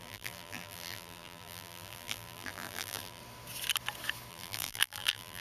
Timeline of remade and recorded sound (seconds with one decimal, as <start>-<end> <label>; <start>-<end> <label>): 0.0-3.2 remade; 3.2-4.3 recorded; 4.3-5.4 remade